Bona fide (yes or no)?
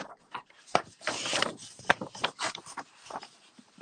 no